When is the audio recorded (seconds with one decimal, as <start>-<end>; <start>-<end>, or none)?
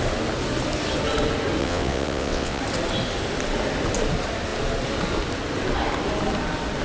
0.0-1.6; 2.6-6.8